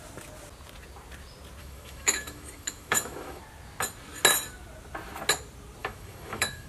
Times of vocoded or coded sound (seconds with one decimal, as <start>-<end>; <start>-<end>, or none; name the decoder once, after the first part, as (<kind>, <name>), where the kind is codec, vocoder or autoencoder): 1.6-3.4 (autoencoder, DAC-VAE); 5.8-6.7